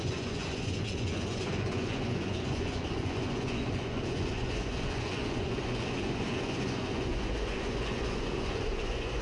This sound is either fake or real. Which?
fake